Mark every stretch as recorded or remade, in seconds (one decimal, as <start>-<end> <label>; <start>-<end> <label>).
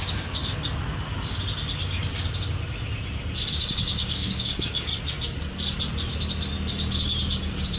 0.0-0.4 remade; 0.4-3.5 recorded; 3.5-4.9 remade; 4.9-7.8 recorded